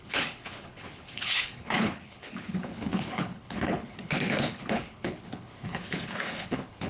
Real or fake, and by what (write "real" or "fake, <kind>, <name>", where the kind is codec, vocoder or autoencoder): fake, codec, HILCodec